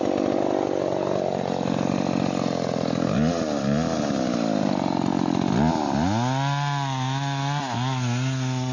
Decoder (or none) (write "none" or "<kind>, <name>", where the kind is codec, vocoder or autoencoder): none